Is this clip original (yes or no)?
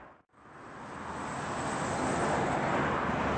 yes